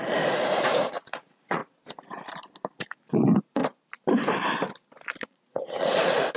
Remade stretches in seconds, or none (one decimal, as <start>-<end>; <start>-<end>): 0.0-1.6; 2.8-3.6; 5.2-6.4